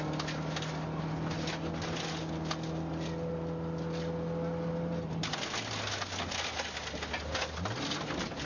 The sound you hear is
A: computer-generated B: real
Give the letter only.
B